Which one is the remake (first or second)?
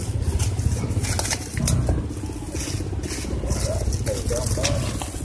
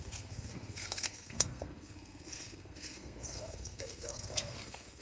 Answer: second